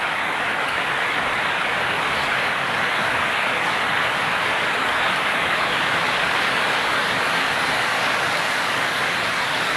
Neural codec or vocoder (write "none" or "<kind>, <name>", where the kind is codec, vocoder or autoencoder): codec, DAC